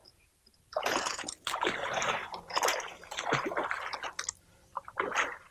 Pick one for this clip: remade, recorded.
remade